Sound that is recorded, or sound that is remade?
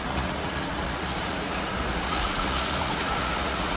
remade